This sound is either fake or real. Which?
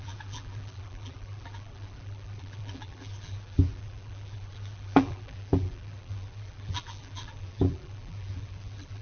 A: fake